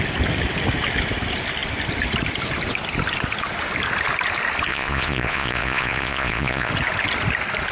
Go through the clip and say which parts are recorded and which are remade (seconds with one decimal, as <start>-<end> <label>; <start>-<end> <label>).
0.0-4.7 recorded; 4.7-6.7 remade; 6.7-7.7 recorded